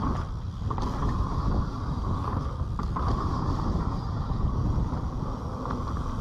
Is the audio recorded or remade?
recorded